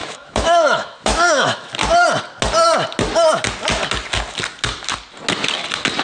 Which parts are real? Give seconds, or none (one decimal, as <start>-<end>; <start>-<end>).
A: 1.7-6.0